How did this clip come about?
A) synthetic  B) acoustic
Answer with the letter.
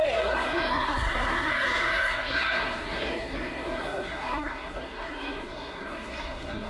A